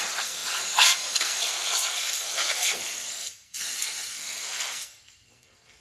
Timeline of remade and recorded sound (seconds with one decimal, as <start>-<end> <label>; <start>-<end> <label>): 0.0-5.8 remade